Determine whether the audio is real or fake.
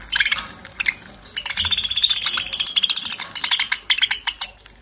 real